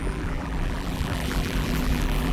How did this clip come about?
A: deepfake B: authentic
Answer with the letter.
A